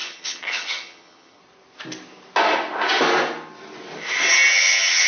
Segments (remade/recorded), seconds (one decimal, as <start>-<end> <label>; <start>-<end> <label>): 0.0-1.4 remade; 1.4-4.5 recorded; 4.5-5.1 remade